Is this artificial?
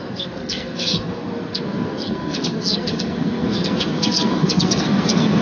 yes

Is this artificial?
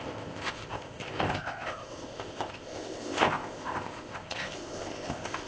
yes